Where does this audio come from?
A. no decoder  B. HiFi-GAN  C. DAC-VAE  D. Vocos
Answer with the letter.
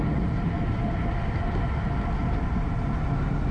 A